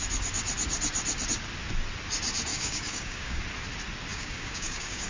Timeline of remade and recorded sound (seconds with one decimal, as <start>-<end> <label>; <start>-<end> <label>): 0.0-2.5 recorded; 2.5-3.4 remade; 3.4-4.1 recorded; 4.1-5.1 remade